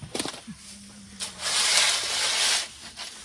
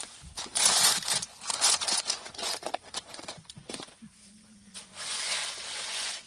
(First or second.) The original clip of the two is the first